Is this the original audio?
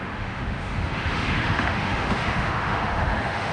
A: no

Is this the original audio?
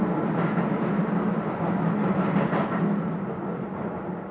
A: yes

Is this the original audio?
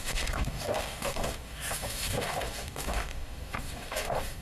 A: no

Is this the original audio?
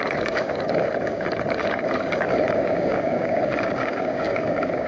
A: no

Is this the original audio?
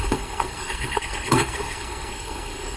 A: no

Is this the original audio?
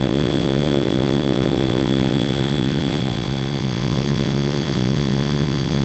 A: no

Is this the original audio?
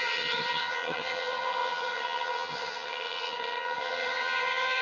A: no